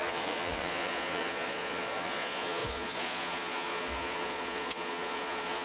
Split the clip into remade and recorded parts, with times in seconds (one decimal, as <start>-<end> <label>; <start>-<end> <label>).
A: 0.0-5.6 remade